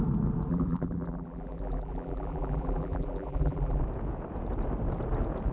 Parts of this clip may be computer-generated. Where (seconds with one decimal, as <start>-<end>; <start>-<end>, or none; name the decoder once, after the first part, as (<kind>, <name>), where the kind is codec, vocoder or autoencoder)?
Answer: 0.5-3.8 (vocoder, BigVGAN v2)